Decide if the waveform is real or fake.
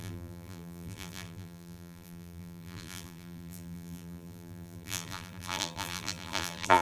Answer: fake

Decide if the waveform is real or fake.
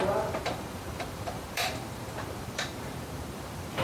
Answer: fake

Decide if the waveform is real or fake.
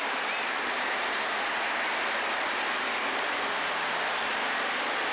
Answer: fake